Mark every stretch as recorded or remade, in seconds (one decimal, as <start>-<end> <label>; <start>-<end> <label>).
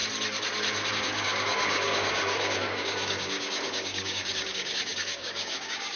0.0-0.9 recorded; 0.9-6.0 remade